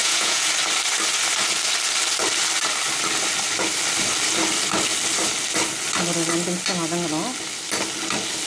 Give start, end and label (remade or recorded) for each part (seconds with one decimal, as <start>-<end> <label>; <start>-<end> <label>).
0.0-0.5 remade; 0.5-8.5 recorded